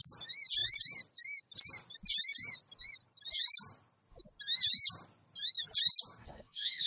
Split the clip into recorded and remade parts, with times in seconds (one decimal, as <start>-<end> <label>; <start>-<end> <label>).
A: 0.0-6.2 recorded; 6.2-6.9 remade